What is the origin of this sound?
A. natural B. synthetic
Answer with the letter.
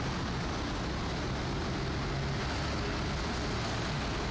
A